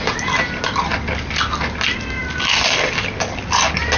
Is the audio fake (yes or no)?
no